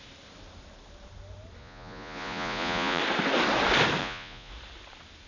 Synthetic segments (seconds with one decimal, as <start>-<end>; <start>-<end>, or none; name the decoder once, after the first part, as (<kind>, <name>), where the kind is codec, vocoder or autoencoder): 1.6-3.0 (vocoder, Vocos); 4.0-4.5